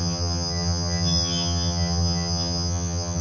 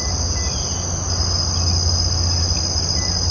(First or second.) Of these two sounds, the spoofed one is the first